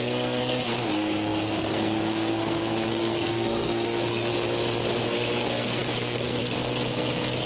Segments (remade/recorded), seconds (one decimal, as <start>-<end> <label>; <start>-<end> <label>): 0.0-4.3 remade; 4.3-5.0 recorded; 5.0-7.5 remade